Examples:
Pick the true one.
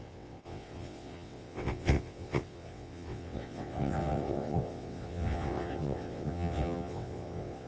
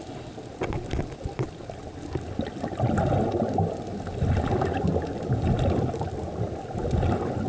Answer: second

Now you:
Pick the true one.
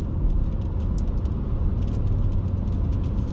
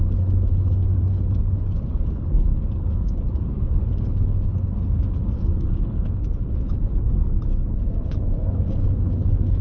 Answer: first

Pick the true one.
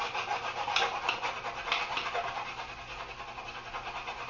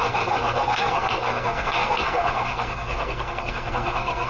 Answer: first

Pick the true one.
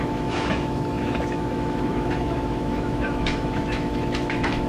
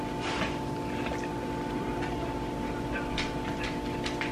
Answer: second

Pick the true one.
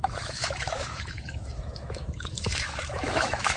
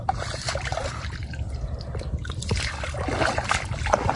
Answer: second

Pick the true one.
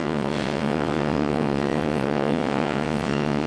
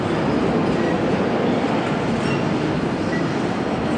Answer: second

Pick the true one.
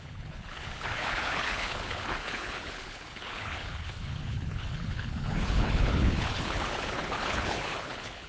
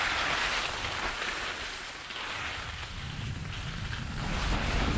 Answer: second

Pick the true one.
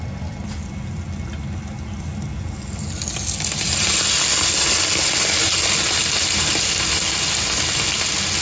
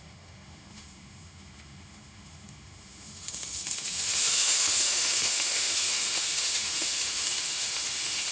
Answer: first